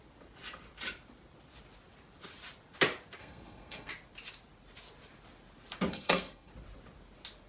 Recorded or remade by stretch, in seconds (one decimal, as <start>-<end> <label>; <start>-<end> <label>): 0.0-3.2 recorded; 3.2-3.9 remade; 3.9-5.9 recorded; 5.9-6.5 remade; 6.5-7.5 recorded